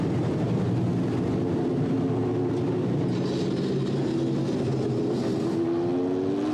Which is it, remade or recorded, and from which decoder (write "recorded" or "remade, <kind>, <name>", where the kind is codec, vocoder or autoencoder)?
recorded